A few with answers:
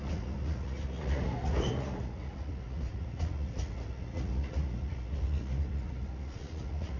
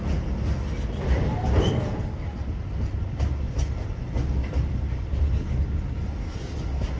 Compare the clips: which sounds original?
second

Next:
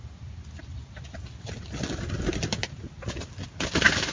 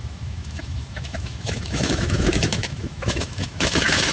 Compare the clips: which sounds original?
first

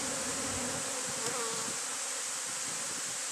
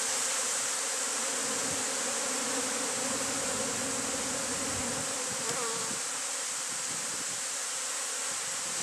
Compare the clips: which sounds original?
first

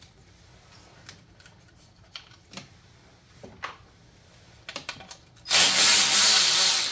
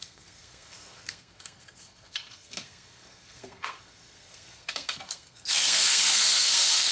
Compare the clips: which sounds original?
first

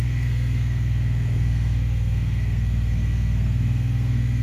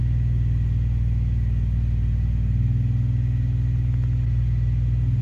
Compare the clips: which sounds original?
second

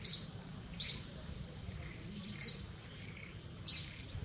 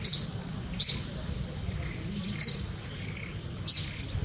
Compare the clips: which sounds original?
second